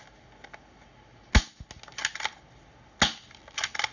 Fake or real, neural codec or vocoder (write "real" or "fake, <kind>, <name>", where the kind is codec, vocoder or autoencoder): real